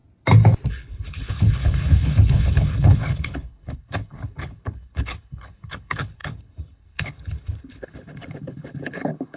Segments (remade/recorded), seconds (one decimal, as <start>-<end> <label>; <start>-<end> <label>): 0.0-0.7 recorded; 0.7-9.4 remade